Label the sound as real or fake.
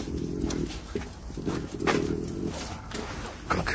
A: real